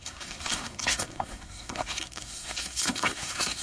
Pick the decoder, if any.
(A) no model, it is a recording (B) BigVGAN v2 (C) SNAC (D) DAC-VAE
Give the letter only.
C